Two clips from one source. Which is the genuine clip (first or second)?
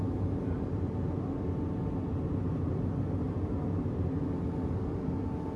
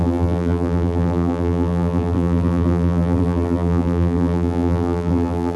first